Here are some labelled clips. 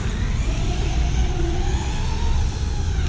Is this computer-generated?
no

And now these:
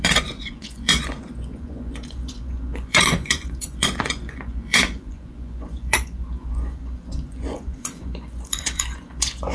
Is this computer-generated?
yes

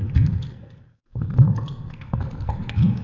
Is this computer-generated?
yes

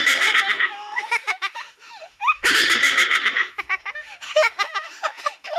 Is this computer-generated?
yes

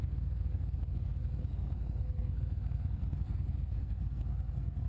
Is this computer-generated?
yes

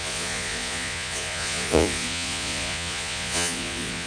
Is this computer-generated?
yes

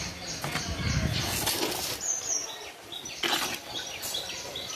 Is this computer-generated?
no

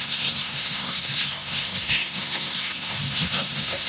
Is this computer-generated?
yes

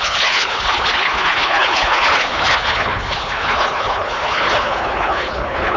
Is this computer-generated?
yes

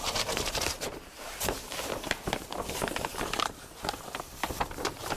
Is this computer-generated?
yes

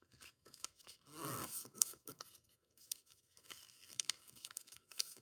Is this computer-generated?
yes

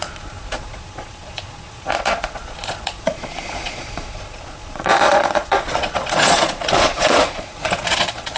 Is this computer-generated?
yes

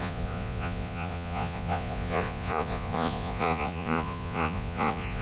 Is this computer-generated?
yes